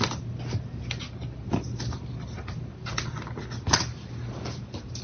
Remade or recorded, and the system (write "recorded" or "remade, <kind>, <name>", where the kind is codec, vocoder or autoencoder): recorded